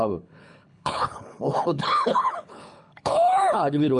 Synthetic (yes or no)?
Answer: yes